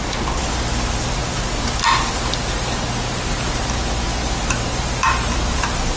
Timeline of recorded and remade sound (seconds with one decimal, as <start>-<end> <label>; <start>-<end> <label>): 0.0-1.2 remade; 1.2-4.6 recorded; 4.6-6.0 remade